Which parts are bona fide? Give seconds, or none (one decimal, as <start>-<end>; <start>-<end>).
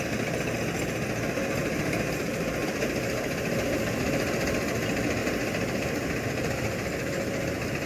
0.0-1.6; 2.1-2.6; 4.0-5.2